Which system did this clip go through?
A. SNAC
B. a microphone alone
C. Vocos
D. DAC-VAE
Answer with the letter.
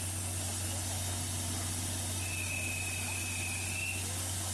B